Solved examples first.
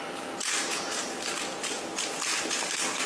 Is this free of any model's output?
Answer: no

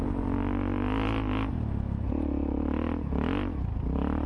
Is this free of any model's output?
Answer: yes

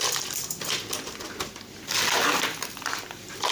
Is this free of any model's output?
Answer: no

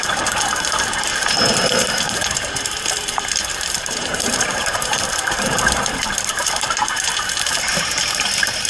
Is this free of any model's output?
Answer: no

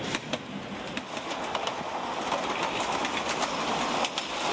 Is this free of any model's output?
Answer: yes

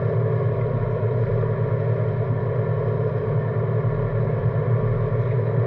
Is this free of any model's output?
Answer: yes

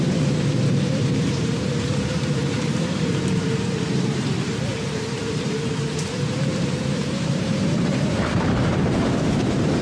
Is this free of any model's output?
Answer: no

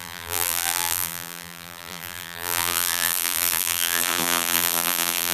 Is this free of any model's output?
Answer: no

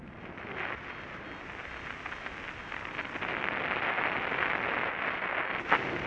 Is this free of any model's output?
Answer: yes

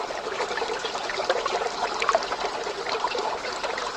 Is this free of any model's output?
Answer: no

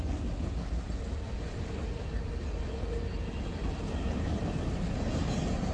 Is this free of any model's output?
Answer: yes